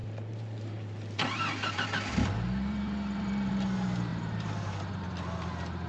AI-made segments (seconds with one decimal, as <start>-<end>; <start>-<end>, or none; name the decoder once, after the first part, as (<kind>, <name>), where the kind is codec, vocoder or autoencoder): 0.0-3.5 (vocoder, BigVGAN v2); 4.1-5.0